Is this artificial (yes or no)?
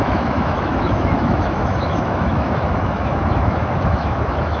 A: yes